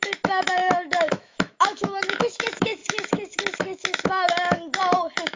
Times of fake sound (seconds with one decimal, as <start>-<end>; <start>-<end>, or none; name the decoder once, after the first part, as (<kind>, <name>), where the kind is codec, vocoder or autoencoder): 0.0-5.4 (autoencoder, DAC-VAE)